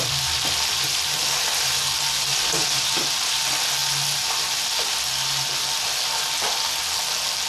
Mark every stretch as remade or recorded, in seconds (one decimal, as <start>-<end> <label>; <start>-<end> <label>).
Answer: 0.0-7.5 recorded